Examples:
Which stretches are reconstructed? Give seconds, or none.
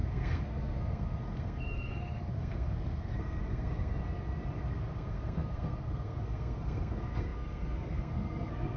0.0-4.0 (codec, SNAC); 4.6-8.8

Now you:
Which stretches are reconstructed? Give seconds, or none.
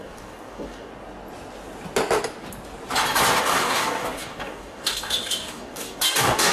0.0-0.9 (codec, DAC); 3.4-6.5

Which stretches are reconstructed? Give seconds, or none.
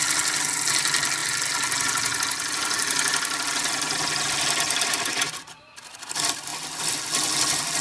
none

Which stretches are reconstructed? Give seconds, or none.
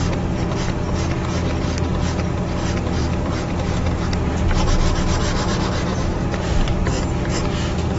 3.0-4.3 (vocoder, BigVGAN v2); 5.9-7.0